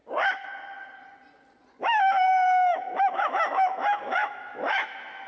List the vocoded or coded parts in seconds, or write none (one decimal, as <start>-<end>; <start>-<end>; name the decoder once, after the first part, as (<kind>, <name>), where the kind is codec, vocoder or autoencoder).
1.8-5.3 (autoencoder, DAC-VAE)